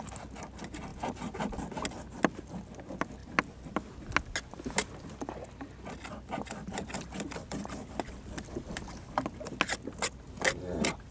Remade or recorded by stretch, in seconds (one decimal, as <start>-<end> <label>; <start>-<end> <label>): 0.0-11.1 recorded